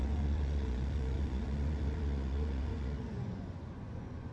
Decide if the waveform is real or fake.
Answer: fake